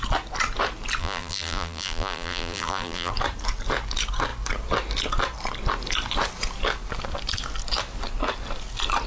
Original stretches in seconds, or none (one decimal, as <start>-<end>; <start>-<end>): 0.0-1.0; 3.1-9.1